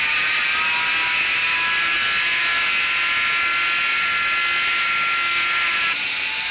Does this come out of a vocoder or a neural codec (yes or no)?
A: no